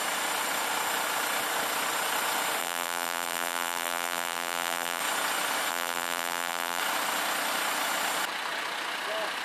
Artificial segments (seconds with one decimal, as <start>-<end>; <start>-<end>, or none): 2.6-5.0; 5.7-6.8